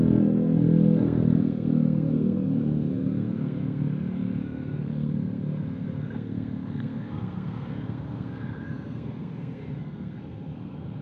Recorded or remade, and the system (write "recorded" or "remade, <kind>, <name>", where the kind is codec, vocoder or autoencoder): remade, codec, SNAC